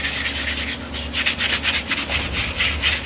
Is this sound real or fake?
real